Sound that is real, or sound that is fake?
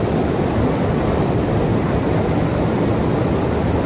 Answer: real